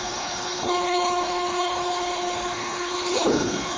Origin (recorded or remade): remade